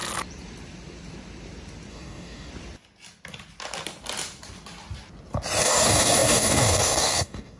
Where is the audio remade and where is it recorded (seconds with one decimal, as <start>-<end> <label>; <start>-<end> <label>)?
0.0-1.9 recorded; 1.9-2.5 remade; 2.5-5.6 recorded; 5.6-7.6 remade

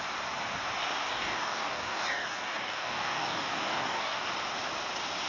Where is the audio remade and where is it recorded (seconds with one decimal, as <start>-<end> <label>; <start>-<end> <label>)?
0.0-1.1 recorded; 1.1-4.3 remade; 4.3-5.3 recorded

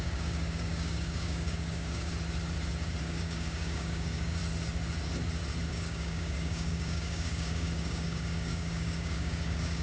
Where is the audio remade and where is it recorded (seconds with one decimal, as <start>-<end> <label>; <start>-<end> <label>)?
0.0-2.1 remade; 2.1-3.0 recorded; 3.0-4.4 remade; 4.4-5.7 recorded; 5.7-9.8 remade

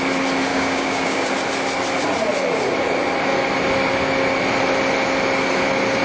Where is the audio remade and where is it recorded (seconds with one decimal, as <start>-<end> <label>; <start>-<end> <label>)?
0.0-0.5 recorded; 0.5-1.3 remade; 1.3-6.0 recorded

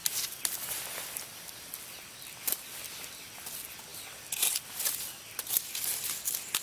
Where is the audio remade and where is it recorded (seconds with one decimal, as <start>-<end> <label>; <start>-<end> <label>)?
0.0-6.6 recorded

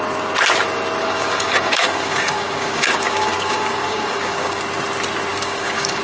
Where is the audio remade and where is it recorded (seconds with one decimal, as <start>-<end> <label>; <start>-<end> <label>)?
0.0-1.0 recorded; 1.0-4.6 remade; 4.6-5.3 recorded; 5.3-6.0 remade

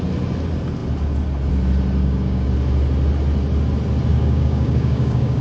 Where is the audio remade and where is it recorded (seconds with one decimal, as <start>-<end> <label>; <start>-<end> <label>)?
0.0-2.0 recorded; 2.0-2.5 remade; 2.5-4.1 recorded; 4.1-5.4 remade